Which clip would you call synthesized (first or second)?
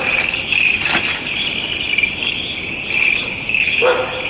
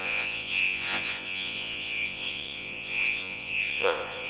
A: second